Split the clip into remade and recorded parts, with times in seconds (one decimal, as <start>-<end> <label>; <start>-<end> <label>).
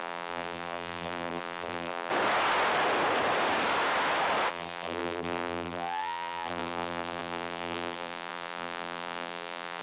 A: 0.0-2.1 remade; 2.1-4.5 recorded; 4.5-9.8 remade